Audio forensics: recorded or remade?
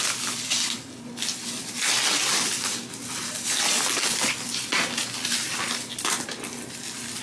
recorded